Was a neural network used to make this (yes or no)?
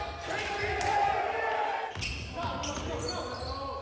no